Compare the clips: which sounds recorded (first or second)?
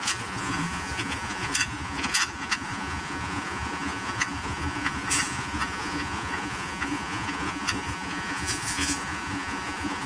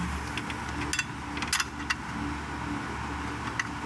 second